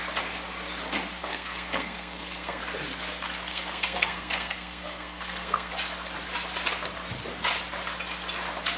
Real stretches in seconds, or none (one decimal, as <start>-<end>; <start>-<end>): 0.0-1.2; 2.6-3.5; 5.7-8.8